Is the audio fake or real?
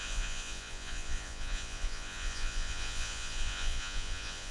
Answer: fake